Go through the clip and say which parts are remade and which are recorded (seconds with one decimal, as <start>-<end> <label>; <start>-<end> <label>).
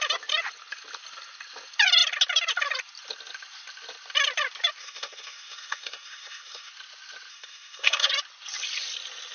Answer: 0.0-4.8 recorded; 4.8-6.7 remade; 6.7-7.3 recorded; 7.3-8.1 remade; 8.1-9.3 recorded